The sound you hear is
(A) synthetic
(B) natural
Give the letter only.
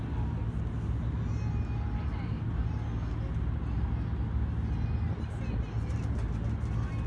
B